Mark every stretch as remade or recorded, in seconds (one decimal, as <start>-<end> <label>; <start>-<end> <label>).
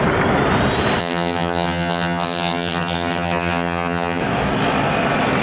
0.0-1.0 recorded; 1.0-4.2 remade; 4.2-5.4 recorded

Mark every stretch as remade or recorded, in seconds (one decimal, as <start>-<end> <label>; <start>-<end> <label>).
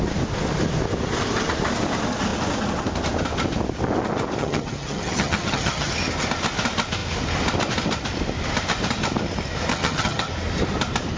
0.0-4.4 recorded; 4.4-5.9 remade; 5.9-9.7 recorded; 9.7-10.3 remade; 10.3-11.2 recorded